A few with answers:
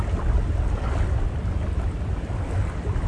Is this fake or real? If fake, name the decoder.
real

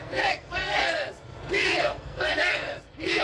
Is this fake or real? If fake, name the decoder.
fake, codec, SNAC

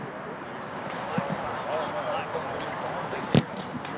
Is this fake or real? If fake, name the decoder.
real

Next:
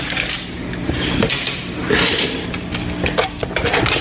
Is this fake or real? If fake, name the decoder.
real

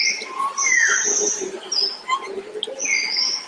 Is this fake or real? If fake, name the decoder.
real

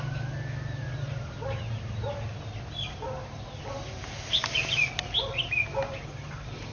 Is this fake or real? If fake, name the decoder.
real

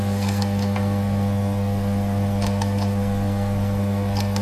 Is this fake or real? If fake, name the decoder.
fake, codec, SNAC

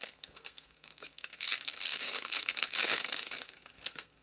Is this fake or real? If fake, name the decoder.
fake, codec, SNAC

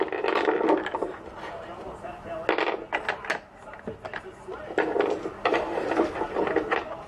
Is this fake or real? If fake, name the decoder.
real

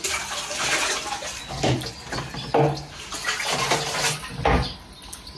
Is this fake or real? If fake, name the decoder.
real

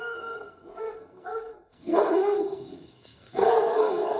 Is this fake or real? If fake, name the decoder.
fake, codec, SNAC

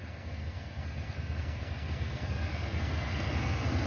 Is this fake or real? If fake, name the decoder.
fake, codec, SNAC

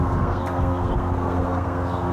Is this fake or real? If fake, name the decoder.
fake, codec, SNAC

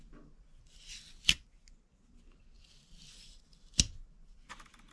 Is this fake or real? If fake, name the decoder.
real